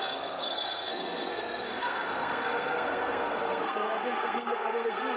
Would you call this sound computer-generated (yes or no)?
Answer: yes